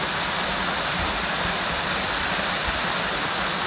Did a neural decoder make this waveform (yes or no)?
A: no